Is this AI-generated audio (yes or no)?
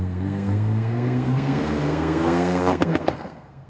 yes